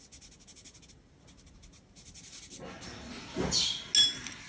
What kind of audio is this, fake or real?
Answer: real